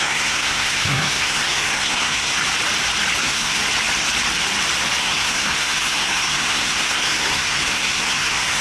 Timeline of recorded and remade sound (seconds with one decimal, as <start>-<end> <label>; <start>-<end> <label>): 0.0-2.4 remade; 2.4-3.2 recorded; 3.2-3.6 remade; 3.6-5.0 recorded; 5.0-8.6 remade